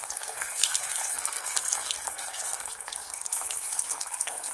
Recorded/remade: remade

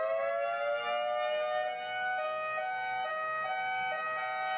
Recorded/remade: recorded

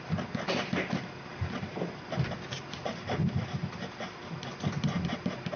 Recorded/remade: recorded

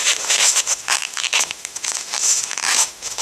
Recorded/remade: remade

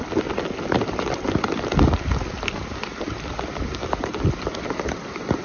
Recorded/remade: recorded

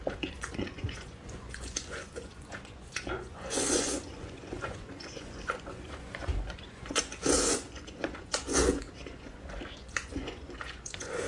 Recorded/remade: remade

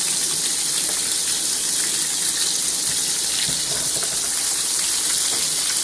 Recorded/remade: recorded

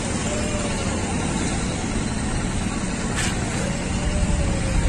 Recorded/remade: recorded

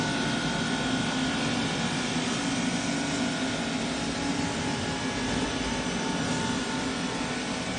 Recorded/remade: recorded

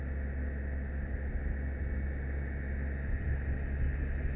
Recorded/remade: recorded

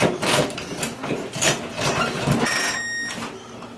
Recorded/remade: recorded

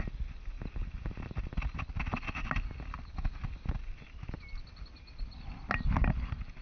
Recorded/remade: recorded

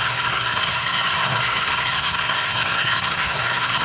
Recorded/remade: remade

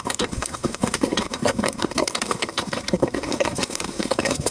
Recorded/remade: remade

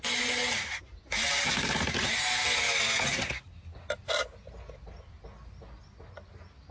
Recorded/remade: recorded